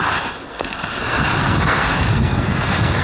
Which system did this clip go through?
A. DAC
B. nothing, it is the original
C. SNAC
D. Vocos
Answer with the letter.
C